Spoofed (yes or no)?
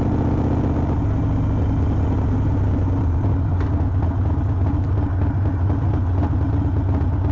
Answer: no